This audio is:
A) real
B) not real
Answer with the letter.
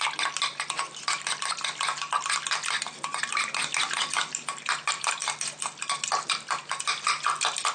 A